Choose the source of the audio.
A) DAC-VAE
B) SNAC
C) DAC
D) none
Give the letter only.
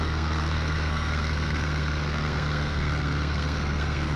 B